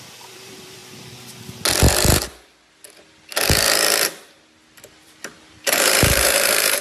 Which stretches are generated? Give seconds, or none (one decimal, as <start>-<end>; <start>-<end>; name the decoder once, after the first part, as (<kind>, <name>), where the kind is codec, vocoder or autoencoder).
0.0-0.8 (vocoder, BigVGAN v2); 4.9-6.8